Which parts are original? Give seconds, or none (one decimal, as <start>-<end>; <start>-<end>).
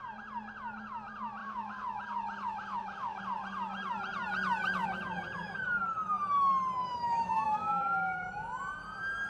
0.0-1.4; 3.2-6.8; 8.6-9.3